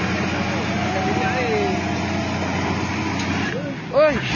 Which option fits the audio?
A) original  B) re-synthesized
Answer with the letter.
A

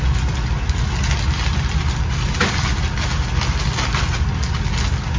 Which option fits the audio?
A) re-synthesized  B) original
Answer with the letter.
B